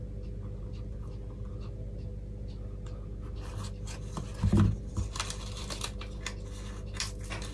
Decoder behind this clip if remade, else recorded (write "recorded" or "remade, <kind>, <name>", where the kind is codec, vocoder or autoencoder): recorded